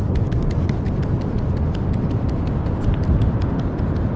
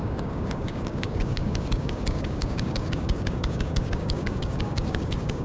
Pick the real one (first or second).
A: first